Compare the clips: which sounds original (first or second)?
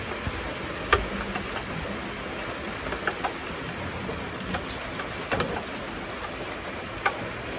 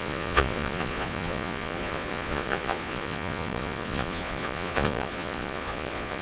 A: first